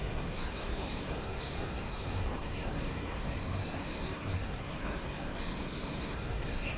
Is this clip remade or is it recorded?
remade